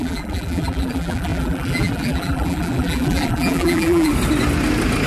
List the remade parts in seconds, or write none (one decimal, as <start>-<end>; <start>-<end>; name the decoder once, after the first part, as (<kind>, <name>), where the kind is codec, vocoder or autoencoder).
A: 0.0-4.1 (vocoder, BigVGAN v2)